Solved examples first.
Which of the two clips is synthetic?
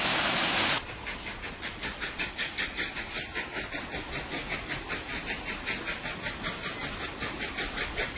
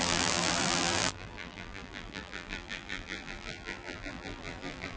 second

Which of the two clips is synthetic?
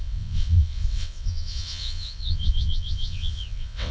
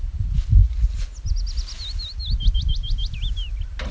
first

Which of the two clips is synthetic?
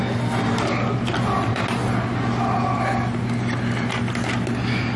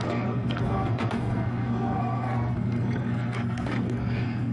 second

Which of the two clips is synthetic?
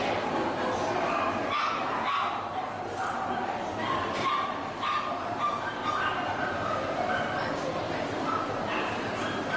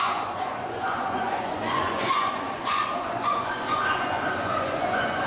second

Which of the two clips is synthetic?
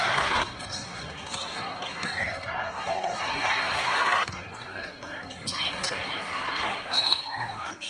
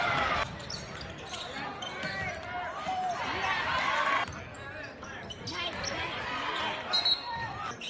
first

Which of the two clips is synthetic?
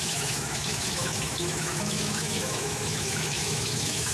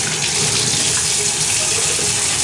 first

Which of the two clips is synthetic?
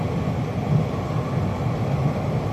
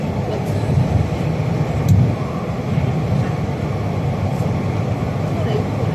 second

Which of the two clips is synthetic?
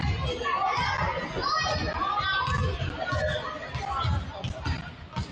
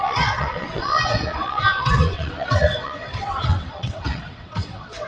second